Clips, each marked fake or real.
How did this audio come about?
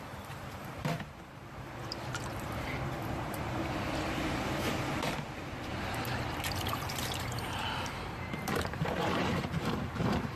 fake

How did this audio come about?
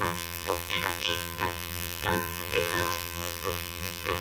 fake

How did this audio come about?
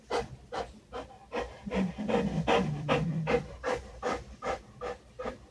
fake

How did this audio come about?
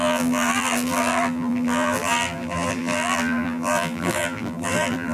fake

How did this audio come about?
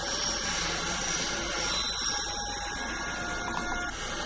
real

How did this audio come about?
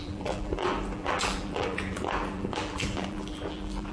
fake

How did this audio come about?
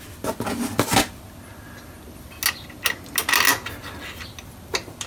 real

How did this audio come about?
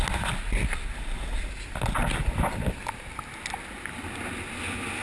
real